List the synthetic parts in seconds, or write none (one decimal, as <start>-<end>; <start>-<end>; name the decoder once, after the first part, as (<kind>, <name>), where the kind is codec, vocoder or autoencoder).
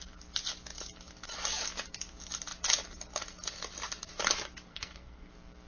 4.7-5.3 (codec, SNAC)